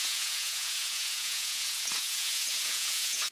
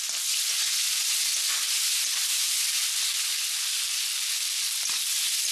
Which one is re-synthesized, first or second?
first